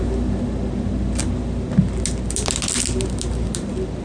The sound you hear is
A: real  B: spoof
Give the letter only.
A